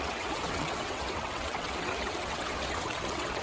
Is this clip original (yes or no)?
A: no